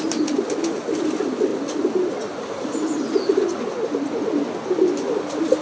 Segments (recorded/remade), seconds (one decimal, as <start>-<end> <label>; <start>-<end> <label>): 0.0-5.6 recorded